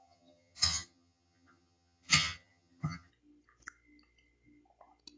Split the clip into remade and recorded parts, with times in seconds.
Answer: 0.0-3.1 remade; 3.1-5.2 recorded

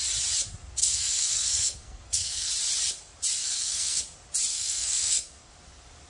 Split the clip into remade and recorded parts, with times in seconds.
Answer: 0.0-0.8 recorded; 0.8-2.5 remade; 2.5-3.4 recorded; 3.4-4.0 remade; 4.0-4.5 recorded; 4.5-5.5 remade; 5.5-6.1 recorded

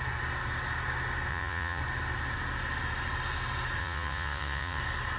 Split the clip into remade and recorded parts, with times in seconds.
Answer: 0.0-1.3 recorded; 1.3-1.8 remade; 1.8-3.8 recorded; 3.8-4.8 remade; 4.8-5.2 recorded

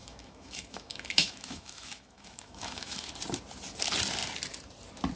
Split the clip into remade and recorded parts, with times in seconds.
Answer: 0.0-3.1 remade; 3.1-5.2 recorded